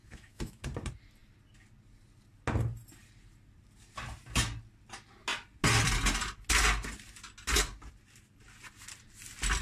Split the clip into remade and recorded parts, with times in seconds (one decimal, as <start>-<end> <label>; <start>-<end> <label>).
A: 0.0-0.6 remade; 0.6-9.6 recorded